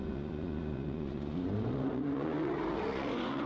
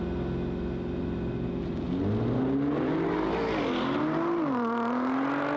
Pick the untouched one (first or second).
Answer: second